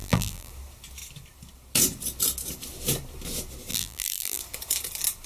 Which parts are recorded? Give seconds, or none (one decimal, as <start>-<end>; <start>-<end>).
0.5-3.7; 4.4-5.3